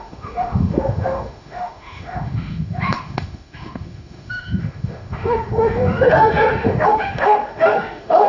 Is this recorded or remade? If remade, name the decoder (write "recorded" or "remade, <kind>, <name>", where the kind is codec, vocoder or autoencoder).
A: remade, autoencoder, DAC-VAE